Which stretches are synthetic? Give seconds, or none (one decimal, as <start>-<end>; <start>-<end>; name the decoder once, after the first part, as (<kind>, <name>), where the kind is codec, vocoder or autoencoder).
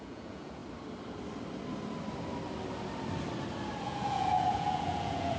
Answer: 0.0-0.6 (vocoder, Vocos); 3.8-5.4